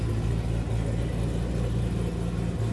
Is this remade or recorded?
recorded